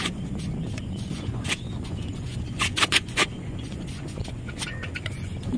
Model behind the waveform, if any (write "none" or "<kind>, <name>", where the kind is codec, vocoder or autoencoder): vocoder, Vocos